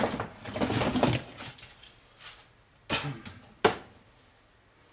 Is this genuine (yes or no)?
yes